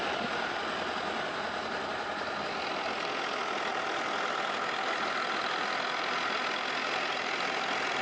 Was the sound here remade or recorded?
recorded